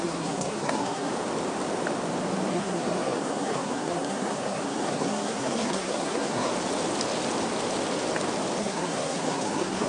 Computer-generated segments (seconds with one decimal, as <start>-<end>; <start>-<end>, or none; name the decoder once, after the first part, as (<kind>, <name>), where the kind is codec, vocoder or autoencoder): 0.0-1.1 (codec, SNAC); 2.5-6.5; 8.6-9.9